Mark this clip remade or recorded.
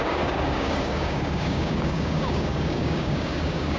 remade